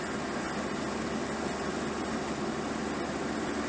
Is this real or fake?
real